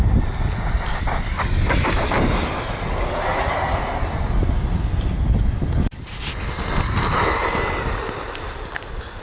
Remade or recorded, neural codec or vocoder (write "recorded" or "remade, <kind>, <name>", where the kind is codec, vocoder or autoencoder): recorded